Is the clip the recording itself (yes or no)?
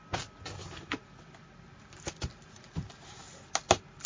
yes